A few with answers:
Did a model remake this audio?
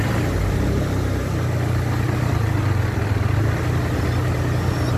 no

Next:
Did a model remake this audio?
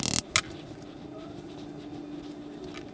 no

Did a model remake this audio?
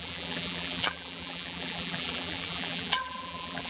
yes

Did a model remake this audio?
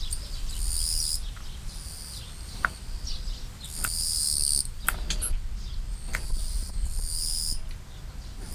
no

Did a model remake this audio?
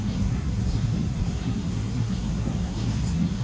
yes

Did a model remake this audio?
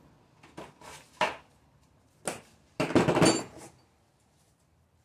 no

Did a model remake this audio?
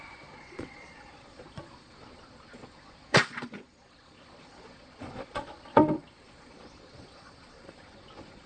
yes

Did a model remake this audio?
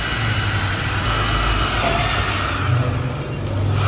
no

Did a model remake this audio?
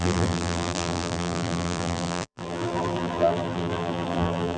yes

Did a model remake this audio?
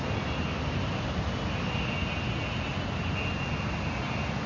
no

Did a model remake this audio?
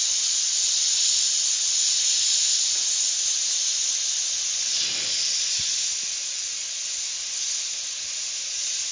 no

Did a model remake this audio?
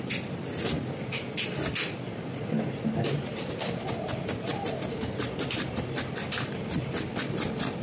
no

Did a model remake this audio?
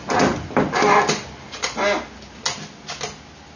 no